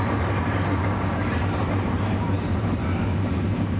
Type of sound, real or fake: fake